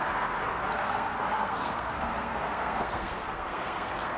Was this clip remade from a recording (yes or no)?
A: yes